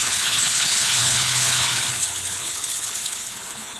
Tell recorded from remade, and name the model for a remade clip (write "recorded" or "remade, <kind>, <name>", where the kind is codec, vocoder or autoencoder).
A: remade, codec, HILCodec